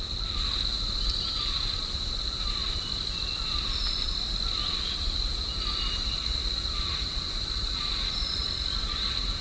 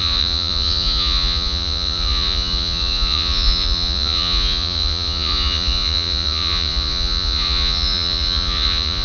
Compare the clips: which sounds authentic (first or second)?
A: first